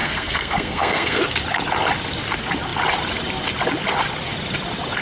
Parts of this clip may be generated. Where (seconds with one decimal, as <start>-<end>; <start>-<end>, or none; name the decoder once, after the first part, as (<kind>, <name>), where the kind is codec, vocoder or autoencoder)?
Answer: 0.0-1.2 (codec, SNAC)